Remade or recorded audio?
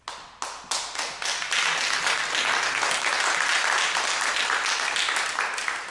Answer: recorded